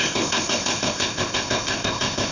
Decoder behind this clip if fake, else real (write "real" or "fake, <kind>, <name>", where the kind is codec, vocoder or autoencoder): fake, codec, ZipCodec